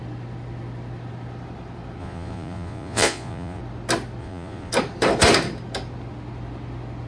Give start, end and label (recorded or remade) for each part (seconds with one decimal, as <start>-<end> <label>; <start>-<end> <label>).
0.0-2.0 recorded; 2.0-3.6 remade; 3.6-4.2 recorded; 4.2-4.7 remade; 4.7-7.1 recorded